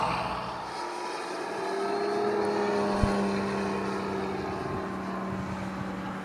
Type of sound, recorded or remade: recorded